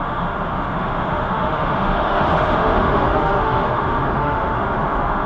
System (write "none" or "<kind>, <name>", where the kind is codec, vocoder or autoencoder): autoencoder, DAC-VAE